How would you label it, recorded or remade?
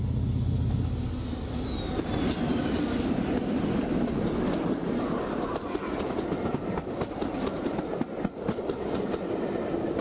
recorded